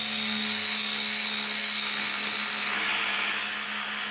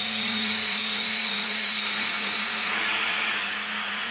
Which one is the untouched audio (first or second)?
first